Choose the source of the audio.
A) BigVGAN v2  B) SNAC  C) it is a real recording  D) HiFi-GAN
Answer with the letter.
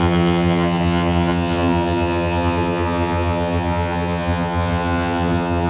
D